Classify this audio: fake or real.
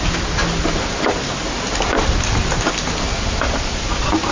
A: real